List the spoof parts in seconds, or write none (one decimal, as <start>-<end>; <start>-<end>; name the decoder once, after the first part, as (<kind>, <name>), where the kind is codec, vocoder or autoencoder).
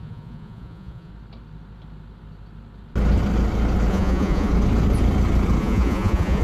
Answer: 0.0-1.1 (vocoder, Vocos); 3.9-4.5; 5.6-6.4